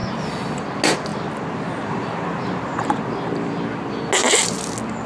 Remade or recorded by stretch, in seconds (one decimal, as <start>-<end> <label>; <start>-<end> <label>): 0.0-1.1 recorded; 1.1-2.9 remade; 2.9-5.1 recorded